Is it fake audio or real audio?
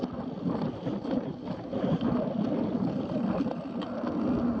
real